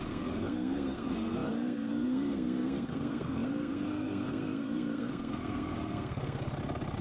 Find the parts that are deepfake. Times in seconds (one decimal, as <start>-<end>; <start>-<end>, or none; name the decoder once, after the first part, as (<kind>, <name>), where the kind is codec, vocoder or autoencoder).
0.0-6.4 (codec, SNAC)